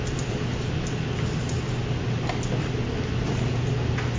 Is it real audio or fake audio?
real